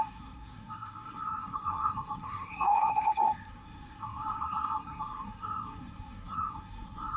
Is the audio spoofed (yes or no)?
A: yes